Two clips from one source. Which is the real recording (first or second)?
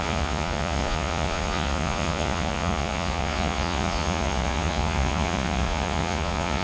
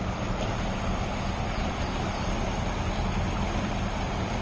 second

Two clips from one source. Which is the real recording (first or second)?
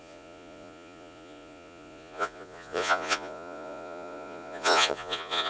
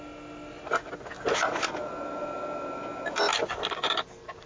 second